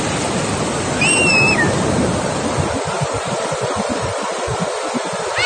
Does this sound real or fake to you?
real